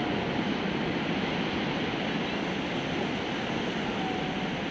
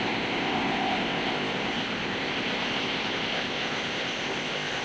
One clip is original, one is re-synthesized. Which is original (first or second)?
first